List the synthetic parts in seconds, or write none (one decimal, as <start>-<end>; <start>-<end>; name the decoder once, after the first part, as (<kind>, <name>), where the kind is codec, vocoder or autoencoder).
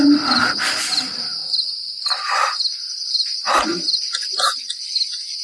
none